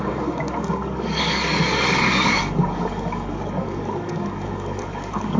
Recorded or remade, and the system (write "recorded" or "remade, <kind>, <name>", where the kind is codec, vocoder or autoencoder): remade, codec, DAC